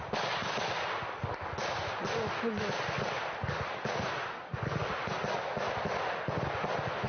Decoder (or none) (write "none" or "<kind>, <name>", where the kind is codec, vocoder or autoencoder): none